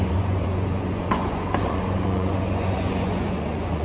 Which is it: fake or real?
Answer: fake